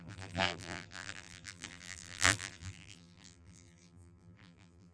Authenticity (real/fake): fake